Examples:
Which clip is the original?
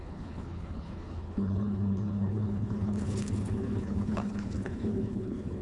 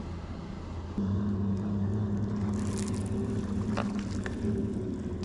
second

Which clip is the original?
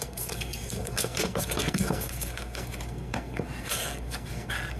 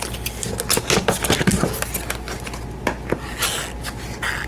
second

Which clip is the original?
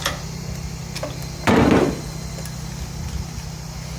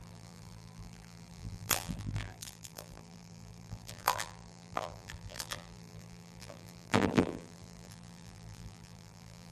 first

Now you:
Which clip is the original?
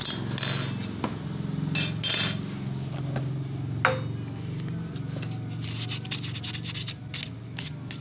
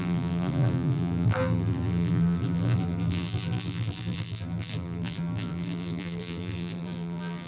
first